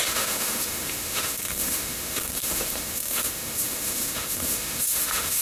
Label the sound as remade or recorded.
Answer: remade